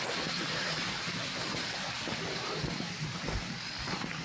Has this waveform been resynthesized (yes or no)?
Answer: no